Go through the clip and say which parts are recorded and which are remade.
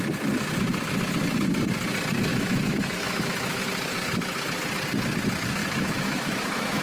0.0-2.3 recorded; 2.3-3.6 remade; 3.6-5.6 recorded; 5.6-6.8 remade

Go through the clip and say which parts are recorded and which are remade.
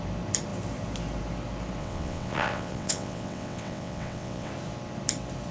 0.0-1.8 recorded; 1.8-4.5 remade; 4.5-5.5 recorded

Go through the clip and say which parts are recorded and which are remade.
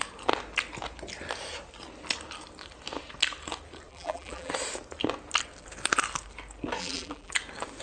0.0-3.9 recorded; 3.9-4.5 remade; 4.5-6.8 recorded; 6.8-7.3 remade; 7.3-7.8 recorded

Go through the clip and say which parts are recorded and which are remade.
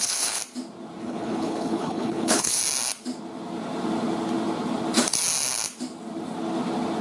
0.0-0.4 remade; 0.4-1.0 recorded; 1.0-2.6 remade; 2.6-7.0 recorded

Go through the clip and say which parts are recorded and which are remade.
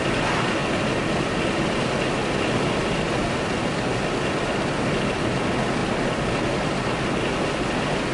0.0-8.1 recorded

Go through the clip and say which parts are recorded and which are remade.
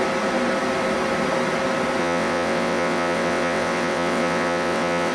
0.0-2.0 recorded; 2.0-5.1 remade